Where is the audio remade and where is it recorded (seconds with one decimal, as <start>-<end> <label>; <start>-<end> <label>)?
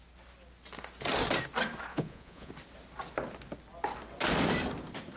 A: 0.0-1.9 recorded; 1.9-2.5 remade; 2.5-5.2 recorded